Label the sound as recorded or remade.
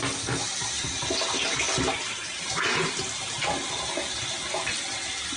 recorded